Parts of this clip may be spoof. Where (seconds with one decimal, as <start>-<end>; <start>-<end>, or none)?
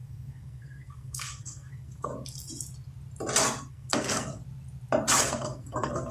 0.0-2.1; 3.7-4.4; 5.2-6.1